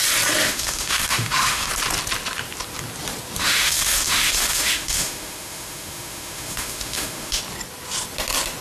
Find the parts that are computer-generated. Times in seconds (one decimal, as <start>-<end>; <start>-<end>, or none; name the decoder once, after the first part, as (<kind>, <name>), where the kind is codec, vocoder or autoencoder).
0.4-1.7 (autoencoder, DAC-VAE); 3.4-7.4